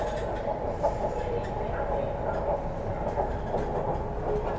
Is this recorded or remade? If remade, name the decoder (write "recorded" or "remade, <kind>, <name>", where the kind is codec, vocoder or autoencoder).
recorded